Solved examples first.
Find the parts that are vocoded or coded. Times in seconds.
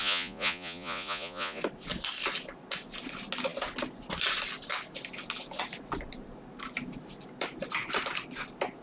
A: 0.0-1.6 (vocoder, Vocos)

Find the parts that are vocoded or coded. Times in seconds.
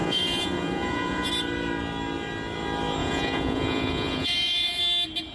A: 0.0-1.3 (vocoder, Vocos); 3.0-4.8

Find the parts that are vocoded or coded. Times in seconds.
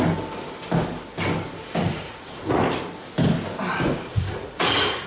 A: 1.8-2.6 (vocoder, Vocos); 4.1-5.1